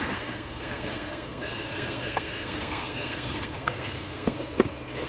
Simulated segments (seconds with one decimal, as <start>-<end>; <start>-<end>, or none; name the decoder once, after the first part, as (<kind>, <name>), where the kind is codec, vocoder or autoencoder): 0.0-5.1 (codec, SNAC)